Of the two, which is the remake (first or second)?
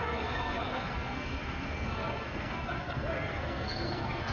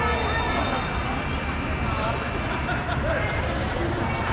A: first